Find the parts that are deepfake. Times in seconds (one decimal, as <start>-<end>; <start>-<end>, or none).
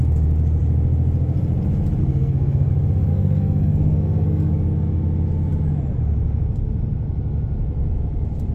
2.0-2.7; 3.1-4.5